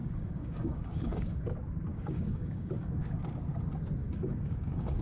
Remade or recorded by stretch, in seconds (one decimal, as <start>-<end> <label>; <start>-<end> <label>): 0.0-1.5 remade; 1.5-1.9 recorded; 1.9-3.2 remade; 3.2-4.0 recorded; 4.0-5.0 remade